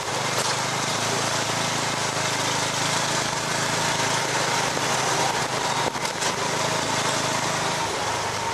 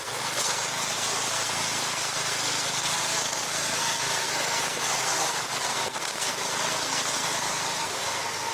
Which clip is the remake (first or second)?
second